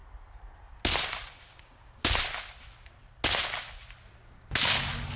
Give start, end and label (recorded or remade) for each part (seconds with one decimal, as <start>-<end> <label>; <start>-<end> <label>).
0.0-5.2 recorded

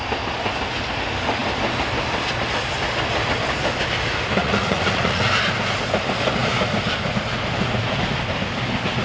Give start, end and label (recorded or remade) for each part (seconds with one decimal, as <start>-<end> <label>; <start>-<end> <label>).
0.0-4.4 recorded; 4.4-5.3 remade; 5.3-9.0 recorded